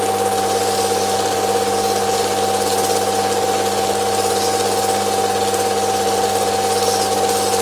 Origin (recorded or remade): recorded